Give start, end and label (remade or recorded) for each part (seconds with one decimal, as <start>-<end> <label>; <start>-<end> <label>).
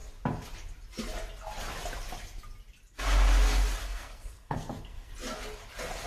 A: 0.0-3.8 recorded; 3.8-5.1 remade; 5.1-6.1 recorded